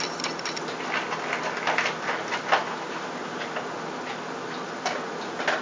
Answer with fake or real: real